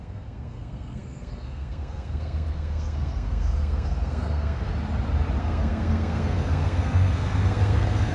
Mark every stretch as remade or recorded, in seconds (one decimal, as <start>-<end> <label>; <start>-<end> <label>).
0.0-4.7 remade; 4.7-5.4 recorded; 5.4-8.1 remade